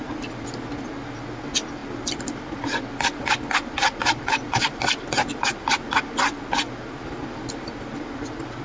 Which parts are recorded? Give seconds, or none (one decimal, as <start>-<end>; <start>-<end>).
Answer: 0.0-8.6